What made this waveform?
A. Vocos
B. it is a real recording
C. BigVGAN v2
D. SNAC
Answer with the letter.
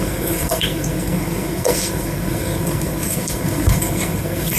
D